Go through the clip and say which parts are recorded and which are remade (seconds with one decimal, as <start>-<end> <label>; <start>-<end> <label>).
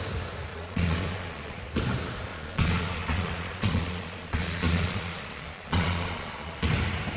0.0-0.5 recorded; 0.5-1.6 remade; 1.6-2.3 recorded; 2.3-6.6 remade; 6.6-7.2 recorded